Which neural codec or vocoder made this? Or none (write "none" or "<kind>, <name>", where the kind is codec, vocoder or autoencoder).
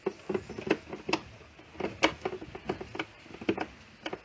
none